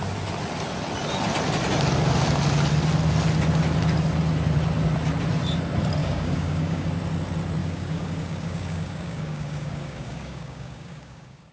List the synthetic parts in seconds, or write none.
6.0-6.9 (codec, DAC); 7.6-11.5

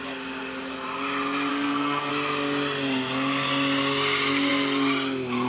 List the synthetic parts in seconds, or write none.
1.5-2.1 (codec, SNAC)

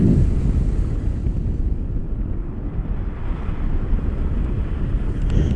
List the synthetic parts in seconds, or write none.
none

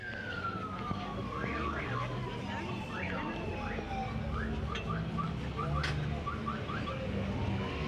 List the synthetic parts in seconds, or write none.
0.0-2.2 (codec, DAC); 6.9-7.9

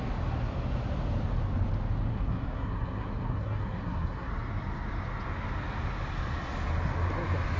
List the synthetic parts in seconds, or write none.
2.1-4.3 (codec, SNAC)

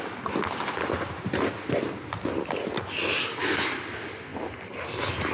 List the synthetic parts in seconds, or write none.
none